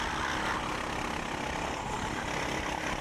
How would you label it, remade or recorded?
recorded